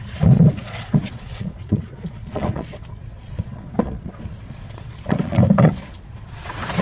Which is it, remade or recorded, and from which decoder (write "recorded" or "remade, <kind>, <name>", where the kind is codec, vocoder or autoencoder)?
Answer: remade, vocoder, Vocos